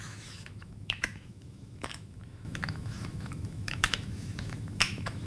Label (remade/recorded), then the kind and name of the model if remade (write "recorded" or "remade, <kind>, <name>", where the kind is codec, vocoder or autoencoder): remade, autoencoder, DAC-VAE